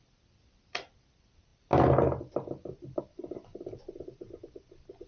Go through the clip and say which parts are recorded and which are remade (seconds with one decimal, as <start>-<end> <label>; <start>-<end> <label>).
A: 0.0-5.1 recorded